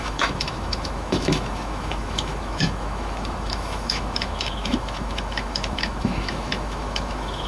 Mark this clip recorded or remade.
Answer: remade